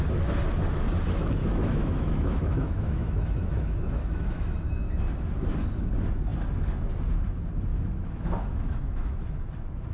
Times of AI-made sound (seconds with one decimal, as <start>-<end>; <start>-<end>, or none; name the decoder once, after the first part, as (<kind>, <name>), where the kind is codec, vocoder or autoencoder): 1.4-4.7 (autoencoder, DAC-VAE); 7.7-9.5